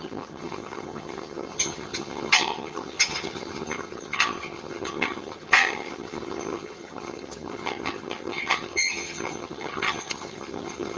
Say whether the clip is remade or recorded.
remade